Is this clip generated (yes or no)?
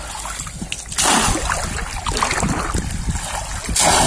no